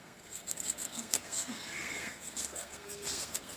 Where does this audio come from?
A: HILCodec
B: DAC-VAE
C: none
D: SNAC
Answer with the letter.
D